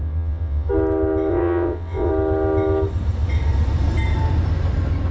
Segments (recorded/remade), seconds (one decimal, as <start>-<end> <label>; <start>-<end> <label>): 0.0-0.7 remade; 0.7-1.3 recorded; 1.3-2.1 remade; 2.1-5.1 recorded